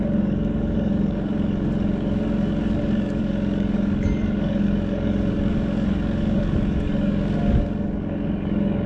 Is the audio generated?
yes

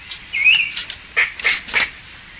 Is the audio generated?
no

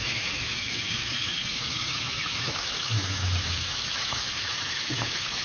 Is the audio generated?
yes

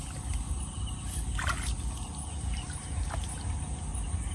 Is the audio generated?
no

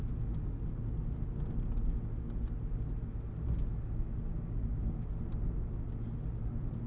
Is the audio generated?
no